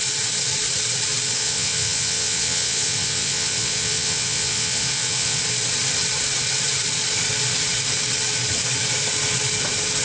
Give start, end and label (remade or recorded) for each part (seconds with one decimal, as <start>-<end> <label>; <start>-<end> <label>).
0.0-1.4 recorded; 1.4-5.4 remade; 5.4-10.0 recorded